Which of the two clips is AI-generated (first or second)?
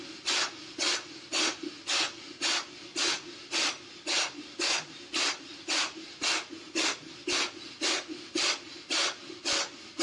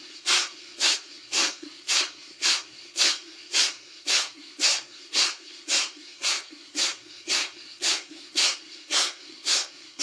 second